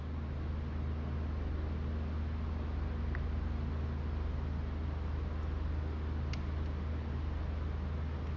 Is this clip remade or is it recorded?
recorded